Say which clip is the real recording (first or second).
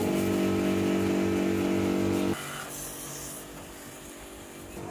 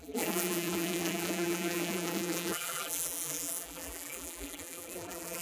first